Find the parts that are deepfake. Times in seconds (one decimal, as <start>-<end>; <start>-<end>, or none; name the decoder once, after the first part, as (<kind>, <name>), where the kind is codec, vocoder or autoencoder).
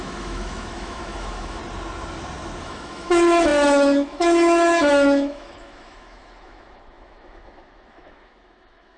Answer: 0.0-1.6 (autoencoder, DAC-VAE); 2.6-9.0